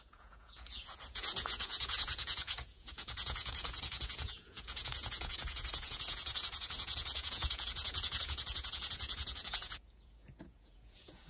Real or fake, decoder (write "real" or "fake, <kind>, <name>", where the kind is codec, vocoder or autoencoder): fake, vocoder, Vocos